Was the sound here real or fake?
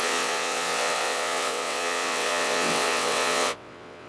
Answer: fake